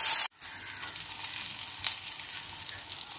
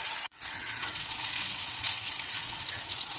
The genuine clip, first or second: first